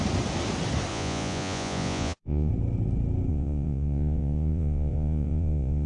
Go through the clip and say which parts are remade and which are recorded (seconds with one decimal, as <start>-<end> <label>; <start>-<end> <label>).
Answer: 0.0-0.9 recorded; 0.9-2.5 remade; 2.5-3.3 recorded; 3.3-5.9 remade